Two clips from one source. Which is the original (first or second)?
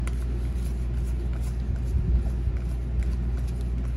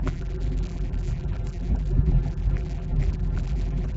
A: first